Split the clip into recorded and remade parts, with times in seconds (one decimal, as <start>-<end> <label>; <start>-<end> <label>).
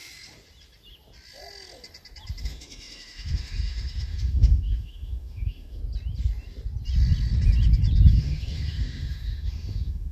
0.0-2.4 recorded; 2.4-5.8 remade; 5.8-8.1 recorded; 8.1-10.1 remade